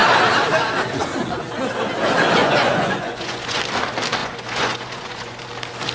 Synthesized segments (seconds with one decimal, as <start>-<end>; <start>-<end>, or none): 2.4-3.6; 4.2-5.4